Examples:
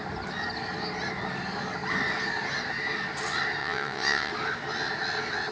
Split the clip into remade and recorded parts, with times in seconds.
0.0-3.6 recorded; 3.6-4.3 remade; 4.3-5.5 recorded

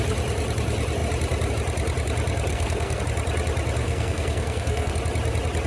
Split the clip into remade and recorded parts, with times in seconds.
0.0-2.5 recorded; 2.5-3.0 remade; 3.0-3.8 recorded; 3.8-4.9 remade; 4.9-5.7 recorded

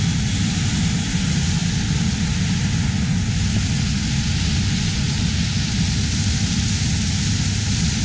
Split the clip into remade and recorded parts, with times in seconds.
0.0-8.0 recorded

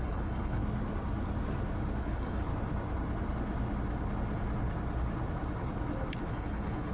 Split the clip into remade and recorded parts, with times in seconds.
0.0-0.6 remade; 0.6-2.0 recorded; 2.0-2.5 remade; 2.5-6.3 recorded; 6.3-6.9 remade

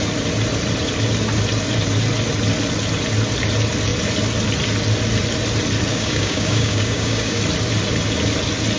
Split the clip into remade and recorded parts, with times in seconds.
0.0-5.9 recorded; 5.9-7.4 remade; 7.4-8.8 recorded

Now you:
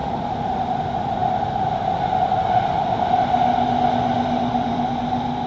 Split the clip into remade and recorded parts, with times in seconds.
0.0-5.5 recorded

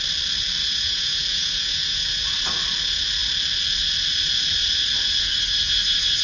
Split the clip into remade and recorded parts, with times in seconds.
0.0-0.6 recorded; 0.6-2.2 remade; 2.2-6.2 recorded